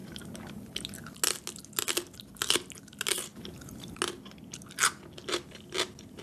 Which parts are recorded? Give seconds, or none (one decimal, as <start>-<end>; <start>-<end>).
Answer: 0.7-3.3; 4.0-6.2